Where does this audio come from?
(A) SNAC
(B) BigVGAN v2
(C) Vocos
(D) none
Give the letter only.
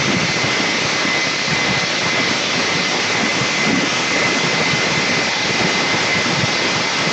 D